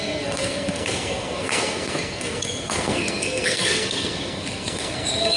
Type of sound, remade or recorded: remade